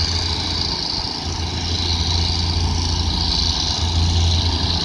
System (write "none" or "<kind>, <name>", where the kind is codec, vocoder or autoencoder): none